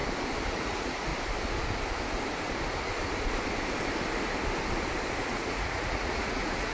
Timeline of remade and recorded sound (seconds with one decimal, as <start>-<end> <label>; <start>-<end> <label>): 0.0-0.5 recorded; 0.5-1.1 remade; 1.1-5.1 recorded; 5.1-6.7 remade

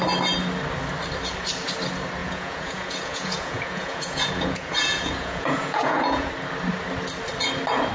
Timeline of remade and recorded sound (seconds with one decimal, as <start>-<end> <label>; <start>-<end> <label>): 0.0-2.2 recorded; 2.2-6.3 remade; 6.3-7.9 recorded